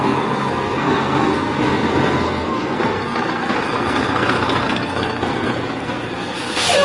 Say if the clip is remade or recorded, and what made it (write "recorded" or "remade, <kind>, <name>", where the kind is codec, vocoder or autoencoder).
remade, codec, SNAC